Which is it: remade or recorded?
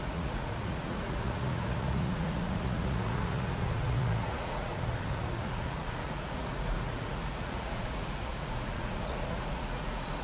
remade